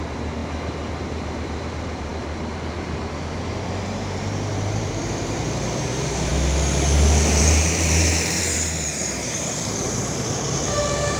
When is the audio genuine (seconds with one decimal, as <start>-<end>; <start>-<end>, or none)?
0.4-1.0; 6.3-7.4